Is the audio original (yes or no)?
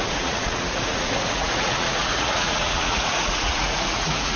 no